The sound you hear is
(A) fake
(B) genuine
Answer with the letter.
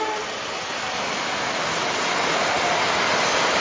B